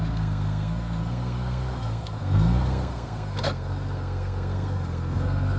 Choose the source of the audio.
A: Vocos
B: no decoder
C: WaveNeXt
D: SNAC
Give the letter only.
D